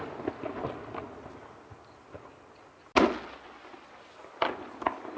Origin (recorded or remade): recorded